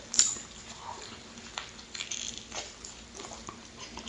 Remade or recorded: remade